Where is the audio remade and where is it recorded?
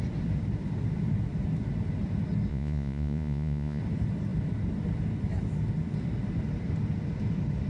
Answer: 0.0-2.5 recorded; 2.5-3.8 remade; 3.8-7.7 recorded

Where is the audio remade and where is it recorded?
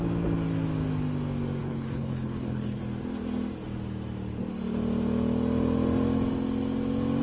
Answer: 0.0-1.6 recorded; 1.6-2.8 remade; 2.8-7.2 recorded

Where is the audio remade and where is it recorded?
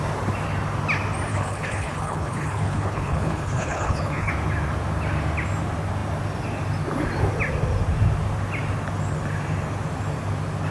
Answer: 0.0-1.3 recorded; 1.3-4.3 remade; 4.3-10.7 recorded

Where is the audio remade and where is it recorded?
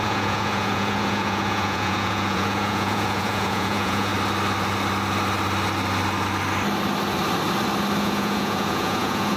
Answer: 0.0-4.1 remade; 4.1-8.0 recorded; 8.0-9.4 remade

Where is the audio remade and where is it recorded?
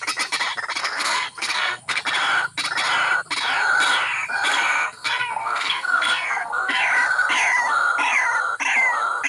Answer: 0.0-0.8 recorded; 0.8-2.0 remade; 2.0-4.5 recorded; 4.5-6.8 remade; 6.8-9.3 recorded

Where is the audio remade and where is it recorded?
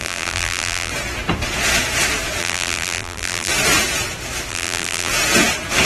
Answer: 0.0-0.9 remade; 0.9-2.4 recorded; 2.4-3.5 remade; 3.5-4.5 recorded; 4.5-5.1 remade; 5.1-5.9 recorded